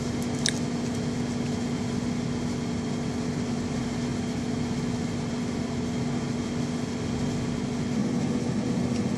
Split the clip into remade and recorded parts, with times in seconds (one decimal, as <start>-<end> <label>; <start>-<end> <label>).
0.0-9.2 recorded